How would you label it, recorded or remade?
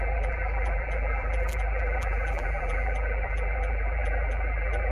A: remade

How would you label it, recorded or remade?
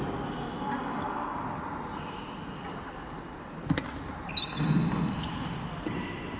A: recorded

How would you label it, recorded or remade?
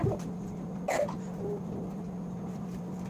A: recorded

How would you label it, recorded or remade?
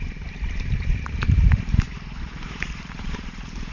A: remade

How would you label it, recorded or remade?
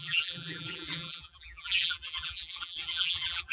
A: remade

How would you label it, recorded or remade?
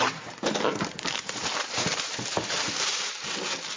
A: remade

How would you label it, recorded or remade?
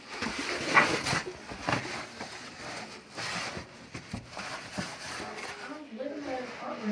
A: recorded